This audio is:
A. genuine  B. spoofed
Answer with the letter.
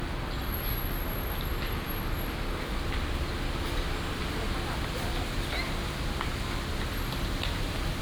A